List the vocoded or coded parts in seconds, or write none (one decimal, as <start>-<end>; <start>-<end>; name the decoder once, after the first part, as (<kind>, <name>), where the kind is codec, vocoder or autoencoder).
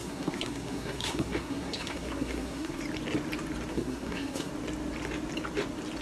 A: 0.0-2.8 (codec, SNAC); 3.7-4.5